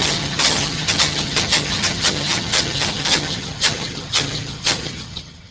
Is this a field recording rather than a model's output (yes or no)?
no